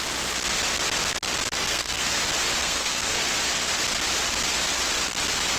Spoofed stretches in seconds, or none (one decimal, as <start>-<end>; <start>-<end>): 1.6-2.2; 2.6-3.2